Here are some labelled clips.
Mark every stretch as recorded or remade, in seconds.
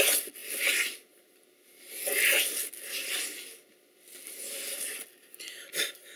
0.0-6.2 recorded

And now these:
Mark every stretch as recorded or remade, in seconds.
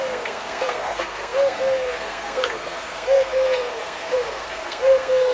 0.0-5.3 remade